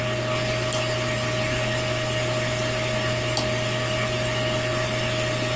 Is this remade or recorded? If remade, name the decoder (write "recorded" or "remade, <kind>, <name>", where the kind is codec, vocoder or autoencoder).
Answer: recorded